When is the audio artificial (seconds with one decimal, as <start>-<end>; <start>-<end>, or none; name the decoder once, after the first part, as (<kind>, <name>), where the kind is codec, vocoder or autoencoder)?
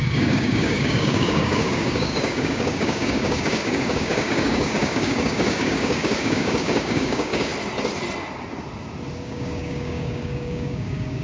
0.0-7.5 (codec, DAC); 9.2-11.2